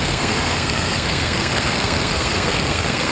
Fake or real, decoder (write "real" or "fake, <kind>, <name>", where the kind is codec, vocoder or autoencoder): fake, codec, SNAC